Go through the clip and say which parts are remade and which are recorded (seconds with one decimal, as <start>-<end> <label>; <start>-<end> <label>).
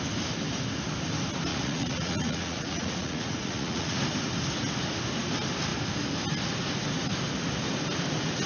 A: 0.0-1.5 recorded; 1.5-4.0 remade; 4.0-8.5 recorded